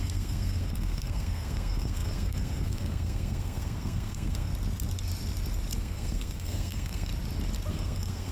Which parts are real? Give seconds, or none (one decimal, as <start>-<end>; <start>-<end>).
4.5-5.8; 7.1-7.7